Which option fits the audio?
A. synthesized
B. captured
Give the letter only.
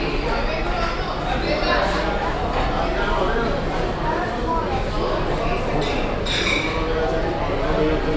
B